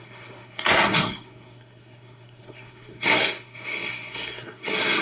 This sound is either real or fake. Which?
fake